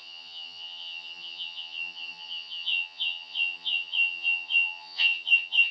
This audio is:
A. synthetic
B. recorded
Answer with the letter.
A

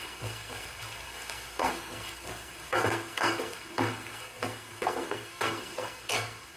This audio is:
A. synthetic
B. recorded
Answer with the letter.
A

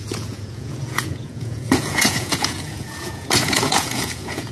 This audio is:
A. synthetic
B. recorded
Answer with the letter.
A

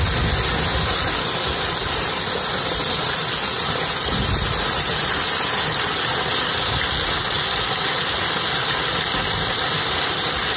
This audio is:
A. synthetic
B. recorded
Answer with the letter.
B